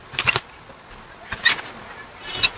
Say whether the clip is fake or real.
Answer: real